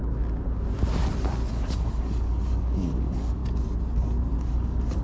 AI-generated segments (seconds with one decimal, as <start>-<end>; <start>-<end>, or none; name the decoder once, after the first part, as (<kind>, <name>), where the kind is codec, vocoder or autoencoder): 1.5-3.4 (codec, DAC); 4.5-5.0